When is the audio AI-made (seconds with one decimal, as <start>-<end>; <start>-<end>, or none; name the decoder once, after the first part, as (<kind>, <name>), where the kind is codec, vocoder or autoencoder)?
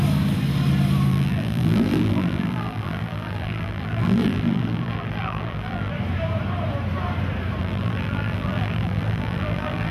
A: 1.1-5.9 (vocoder, BigVGAN v2); 7.6-9.9